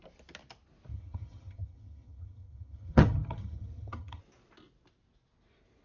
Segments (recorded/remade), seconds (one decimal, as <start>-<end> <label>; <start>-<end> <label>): 0.0-0.9 recorded; 0.9-4.2 remade; 4.2-5.8 recorded